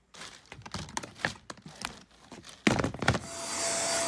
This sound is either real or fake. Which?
real